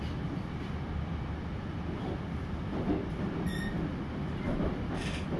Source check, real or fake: real